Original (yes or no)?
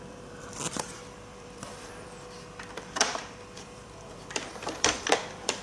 no